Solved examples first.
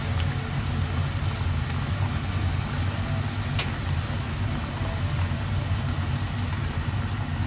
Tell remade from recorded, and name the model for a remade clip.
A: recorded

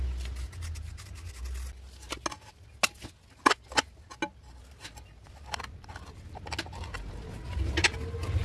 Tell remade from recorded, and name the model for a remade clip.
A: recorded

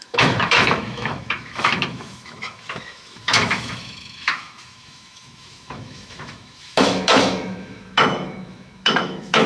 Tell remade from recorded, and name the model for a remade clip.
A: remade, autoencoder, DAC-VAE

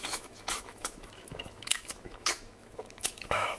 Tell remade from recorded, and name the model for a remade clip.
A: remade, autoencoder, DAC-VAE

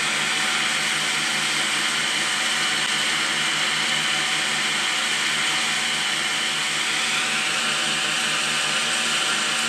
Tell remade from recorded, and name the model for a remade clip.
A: recorded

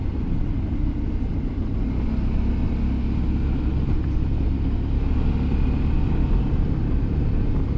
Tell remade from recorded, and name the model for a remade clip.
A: recorded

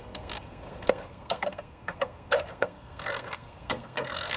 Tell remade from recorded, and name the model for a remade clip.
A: remade, codec, SNAC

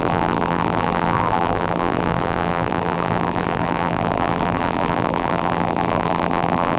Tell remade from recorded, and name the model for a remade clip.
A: remade, vocoder, BigVGAN v2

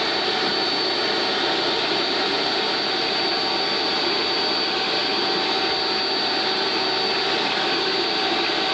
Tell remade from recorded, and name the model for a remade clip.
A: recorded